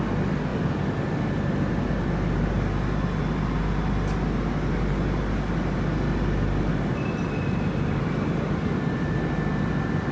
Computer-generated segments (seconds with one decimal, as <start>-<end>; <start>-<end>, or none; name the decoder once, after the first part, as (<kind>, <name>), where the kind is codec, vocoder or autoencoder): none